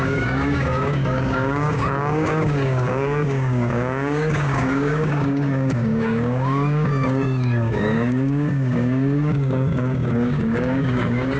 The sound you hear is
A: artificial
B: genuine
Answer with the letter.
A